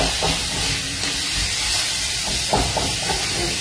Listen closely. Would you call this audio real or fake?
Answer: fake